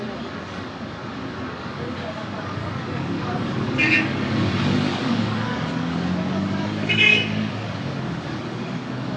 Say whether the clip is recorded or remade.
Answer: remade